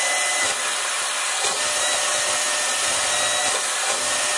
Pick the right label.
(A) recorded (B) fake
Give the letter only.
A